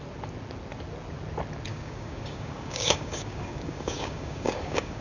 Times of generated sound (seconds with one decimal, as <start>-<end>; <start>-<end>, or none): 1.7-5.0